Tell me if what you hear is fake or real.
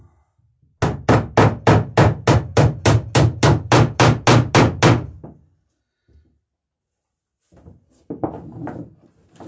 real